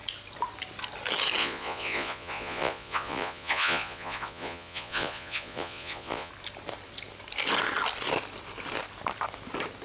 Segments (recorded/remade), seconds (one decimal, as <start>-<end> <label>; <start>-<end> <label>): 0.0-1.4 recorded; 1.4-6.3 remade; 6.3-9.8 recorded